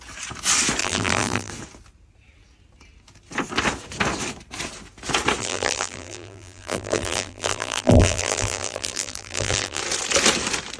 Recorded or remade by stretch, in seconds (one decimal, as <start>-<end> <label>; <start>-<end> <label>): 0.0-0.8 recorded; 0.8-1.5 remade; 1.5-5.4 recorded; 5.4-9.8 remade; 9.8-10.8 recorded